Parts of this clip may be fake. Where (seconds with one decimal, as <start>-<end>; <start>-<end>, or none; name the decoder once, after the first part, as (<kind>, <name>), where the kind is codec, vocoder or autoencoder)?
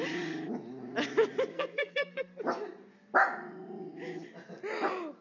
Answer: 1.5-2.4 (codec, SNAC)